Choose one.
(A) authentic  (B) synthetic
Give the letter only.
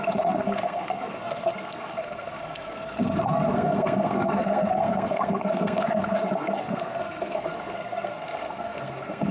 B